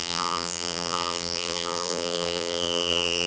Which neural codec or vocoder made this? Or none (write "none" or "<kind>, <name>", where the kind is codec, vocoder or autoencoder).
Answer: vocoder, BigVGAN v2